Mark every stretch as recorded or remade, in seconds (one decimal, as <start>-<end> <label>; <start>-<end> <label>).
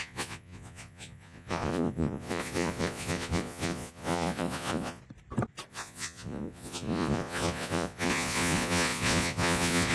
0.0-5.0 remade; 5.0-5.7 recorded; 5.7-9.9 remade